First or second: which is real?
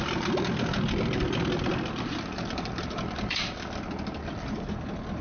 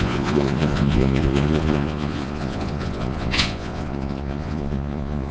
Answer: first